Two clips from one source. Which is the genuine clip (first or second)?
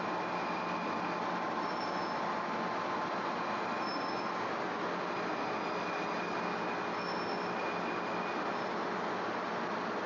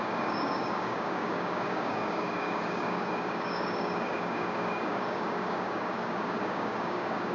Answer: first